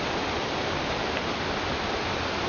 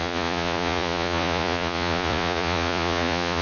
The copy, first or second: second